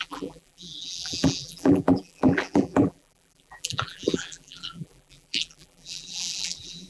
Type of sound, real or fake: fake